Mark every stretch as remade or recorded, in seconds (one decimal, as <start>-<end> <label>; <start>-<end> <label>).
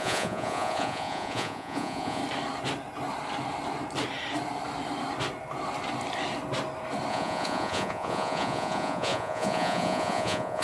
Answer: 0.0-2.2 remade; 2.2-7.1 recorded; 7.1-10.6 remade